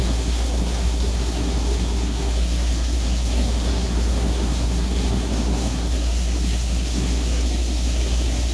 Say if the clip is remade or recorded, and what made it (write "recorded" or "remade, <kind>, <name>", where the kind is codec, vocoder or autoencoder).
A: remade, codec, SNAC